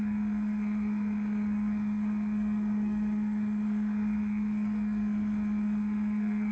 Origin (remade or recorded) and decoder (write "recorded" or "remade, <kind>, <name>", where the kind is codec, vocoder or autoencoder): remade, codec, SNAC